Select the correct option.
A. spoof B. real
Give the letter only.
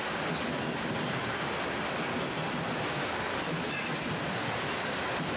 B